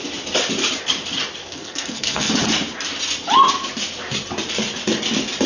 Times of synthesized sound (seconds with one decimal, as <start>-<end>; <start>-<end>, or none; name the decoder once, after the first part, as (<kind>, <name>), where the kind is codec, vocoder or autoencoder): 1.4-2.3 (codec, SNAC)